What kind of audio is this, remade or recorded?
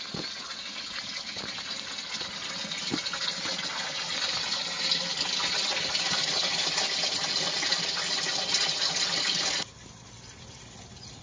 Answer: recorded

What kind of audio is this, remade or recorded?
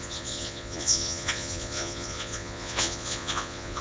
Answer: remade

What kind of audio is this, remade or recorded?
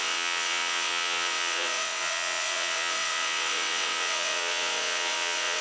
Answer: remade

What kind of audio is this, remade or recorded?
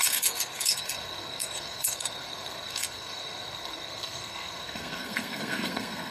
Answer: remade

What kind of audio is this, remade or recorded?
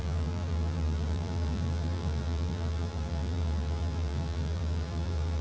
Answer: remade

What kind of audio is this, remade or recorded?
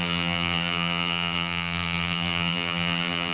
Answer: remade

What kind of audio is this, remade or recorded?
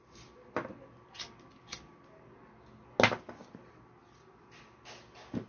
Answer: recorded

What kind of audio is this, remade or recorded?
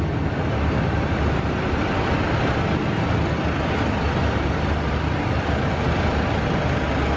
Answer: recorded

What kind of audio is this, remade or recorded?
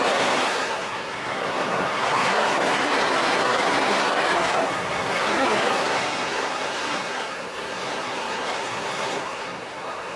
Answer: remade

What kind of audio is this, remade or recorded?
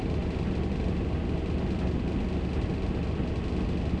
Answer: recorded